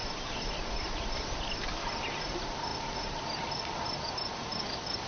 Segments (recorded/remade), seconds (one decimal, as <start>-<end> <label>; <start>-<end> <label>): 0.0-5.1 recorded